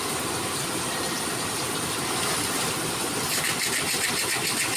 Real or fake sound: real